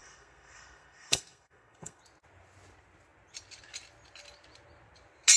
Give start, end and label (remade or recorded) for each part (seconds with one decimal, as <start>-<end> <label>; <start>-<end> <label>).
0.0-2.0 remade; 2.0-5.4 recorded